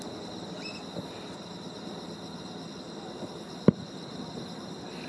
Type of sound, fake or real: real